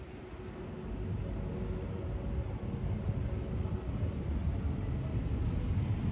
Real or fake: real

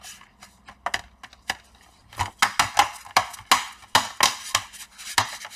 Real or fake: real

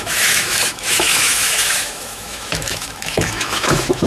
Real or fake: fake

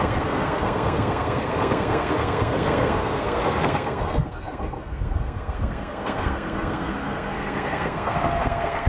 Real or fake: fake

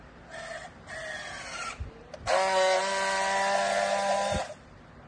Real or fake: real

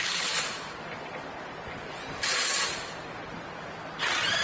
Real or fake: fake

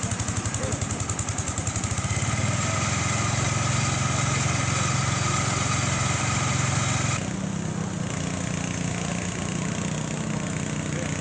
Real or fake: real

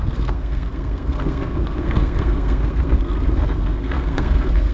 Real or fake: fake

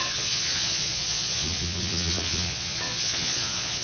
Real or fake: fake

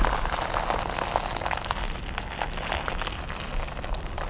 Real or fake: real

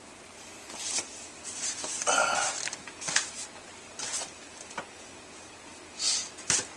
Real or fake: real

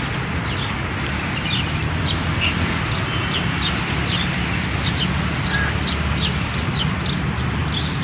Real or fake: real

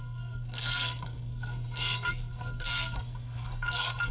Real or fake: fake